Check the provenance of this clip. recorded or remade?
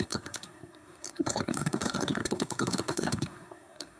remade